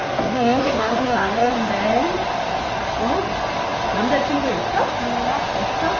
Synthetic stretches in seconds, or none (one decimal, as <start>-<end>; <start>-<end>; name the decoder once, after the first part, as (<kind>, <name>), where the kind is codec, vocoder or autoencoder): 0.0-1.5 (codec, SNAC)